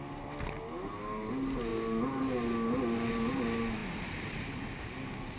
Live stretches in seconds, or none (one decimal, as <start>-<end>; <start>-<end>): 0.0-5.4